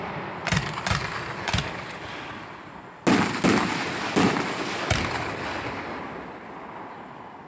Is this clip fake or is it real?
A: real